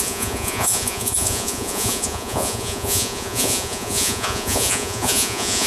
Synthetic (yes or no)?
yes